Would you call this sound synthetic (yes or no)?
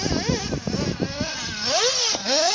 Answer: no